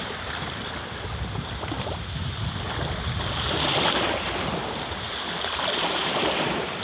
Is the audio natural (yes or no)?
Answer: no